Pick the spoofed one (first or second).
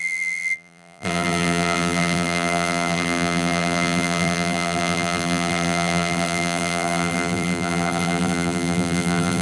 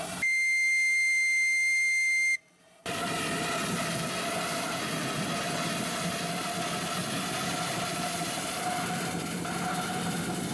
first